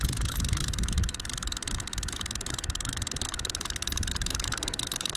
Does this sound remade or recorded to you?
remade